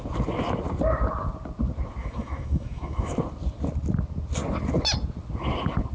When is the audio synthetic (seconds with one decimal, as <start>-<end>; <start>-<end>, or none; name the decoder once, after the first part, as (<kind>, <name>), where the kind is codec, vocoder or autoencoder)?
2.0-3.1 (autoencoder, DAC-VAE)